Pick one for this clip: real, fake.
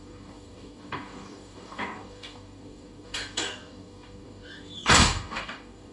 fake